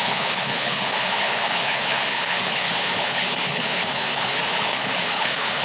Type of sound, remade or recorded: remade